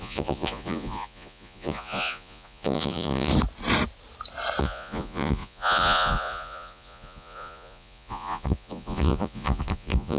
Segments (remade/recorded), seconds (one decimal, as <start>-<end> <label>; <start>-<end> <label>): 0.0-3.3 remade; 3.3-4.6 recorded; 4.6-10.2 remade